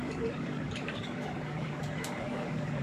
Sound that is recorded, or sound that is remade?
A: remade